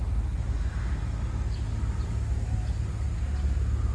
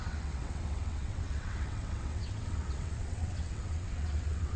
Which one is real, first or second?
first